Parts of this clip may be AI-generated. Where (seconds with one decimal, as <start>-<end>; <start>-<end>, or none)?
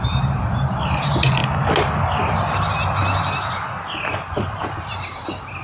0.0-1.4; 2.4-3.0; 4.2-5.6